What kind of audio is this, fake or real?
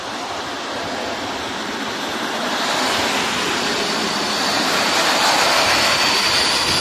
real